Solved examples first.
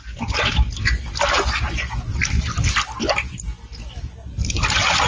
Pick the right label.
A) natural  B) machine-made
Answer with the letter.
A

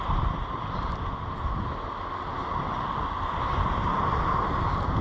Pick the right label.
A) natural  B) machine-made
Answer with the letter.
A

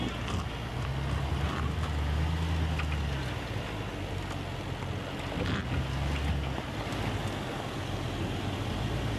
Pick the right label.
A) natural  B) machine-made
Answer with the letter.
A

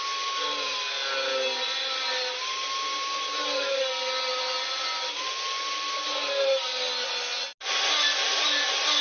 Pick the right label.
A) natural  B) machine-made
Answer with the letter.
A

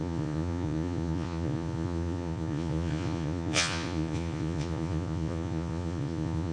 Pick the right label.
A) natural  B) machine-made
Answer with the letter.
B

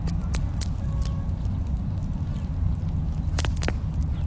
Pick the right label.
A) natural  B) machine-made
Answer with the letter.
A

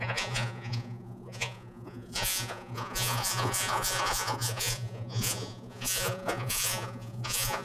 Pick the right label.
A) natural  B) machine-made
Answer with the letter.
B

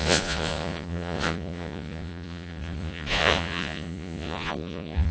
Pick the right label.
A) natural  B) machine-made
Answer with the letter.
B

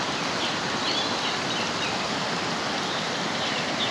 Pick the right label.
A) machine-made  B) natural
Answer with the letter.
B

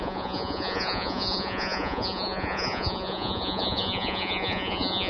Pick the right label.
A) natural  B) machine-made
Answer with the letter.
B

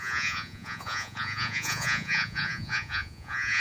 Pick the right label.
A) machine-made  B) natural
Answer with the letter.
A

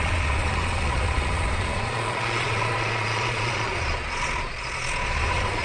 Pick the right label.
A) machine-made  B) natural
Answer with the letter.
A